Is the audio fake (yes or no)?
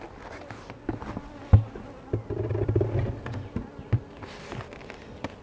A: no